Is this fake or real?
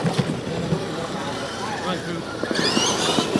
real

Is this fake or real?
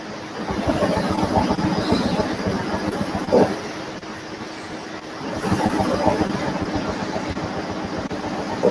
real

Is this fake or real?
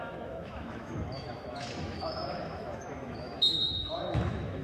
fake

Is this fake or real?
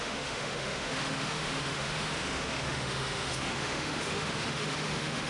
fake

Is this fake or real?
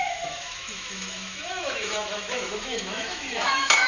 fake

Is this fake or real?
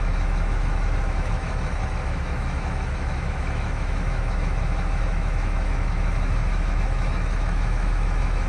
fake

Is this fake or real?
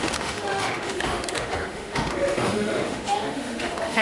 fake